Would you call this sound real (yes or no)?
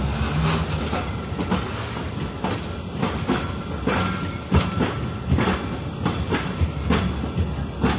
yes